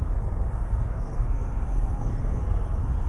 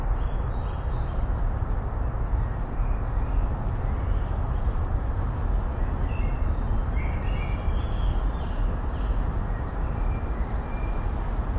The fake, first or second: first